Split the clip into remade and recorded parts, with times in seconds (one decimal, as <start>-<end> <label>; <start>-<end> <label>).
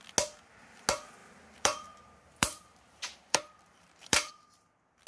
0.0-1.2 recorded; 1.2-4.3 remade; 4.3-5.1 recorded